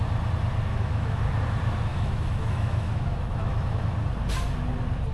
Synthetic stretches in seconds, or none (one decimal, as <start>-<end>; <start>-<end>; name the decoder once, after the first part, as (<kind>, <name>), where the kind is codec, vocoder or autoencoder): 0.7-1.2 (autoencoder, DAC-VAE); 1.9-3.9